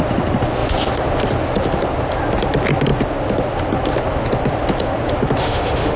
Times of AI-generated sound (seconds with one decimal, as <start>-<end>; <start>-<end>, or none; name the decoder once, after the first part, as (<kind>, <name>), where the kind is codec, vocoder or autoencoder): 5.4-6.0 (autoencoder, DAC-VAE)